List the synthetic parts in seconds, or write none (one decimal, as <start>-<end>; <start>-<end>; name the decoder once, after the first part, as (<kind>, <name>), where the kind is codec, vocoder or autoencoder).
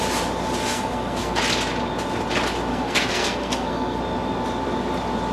0.6-1.4 (codec, SNAC); 2.7-4.0